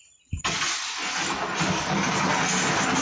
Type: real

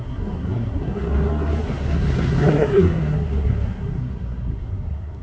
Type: fake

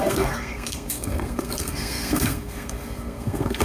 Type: fake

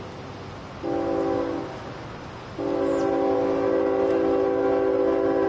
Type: real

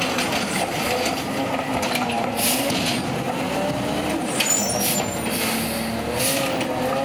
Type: real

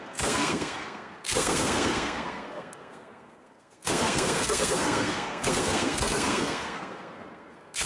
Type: fake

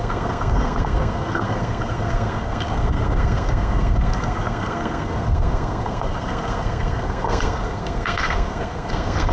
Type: fake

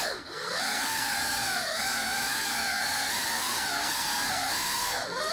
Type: fake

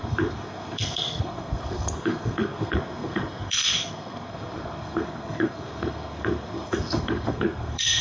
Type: fake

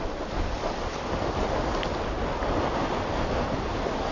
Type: real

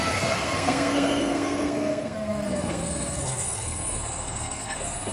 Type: fake